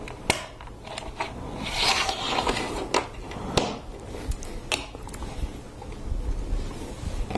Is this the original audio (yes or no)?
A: yes